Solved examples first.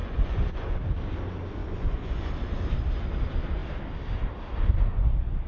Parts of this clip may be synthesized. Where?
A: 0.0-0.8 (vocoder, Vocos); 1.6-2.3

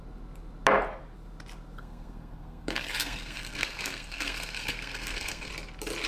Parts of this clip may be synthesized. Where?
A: 1.8-5.5 (codec, SNAC)